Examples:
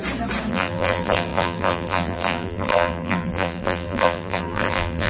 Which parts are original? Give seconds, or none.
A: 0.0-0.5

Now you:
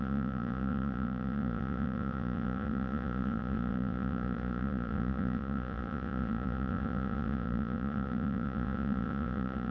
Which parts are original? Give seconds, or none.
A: none

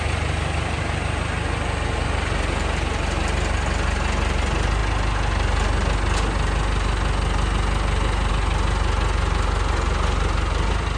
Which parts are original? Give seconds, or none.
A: 0.0-11.0

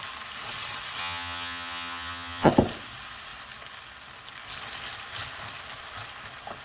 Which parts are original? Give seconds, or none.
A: 0.0-1.0; 2.5-6.6

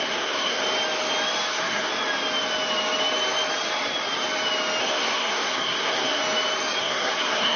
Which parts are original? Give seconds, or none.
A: 0.6-1.5; 1.9-4.8; 6.2-6.8

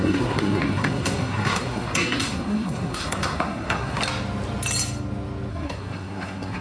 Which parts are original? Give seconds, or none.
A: 4.0-5.5

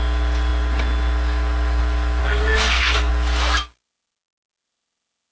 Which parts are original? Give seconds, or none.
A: 0.0-2.2; 3.1-5.3